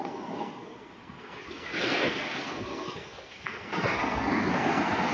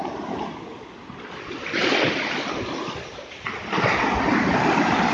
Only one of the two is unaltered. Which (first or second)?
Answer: second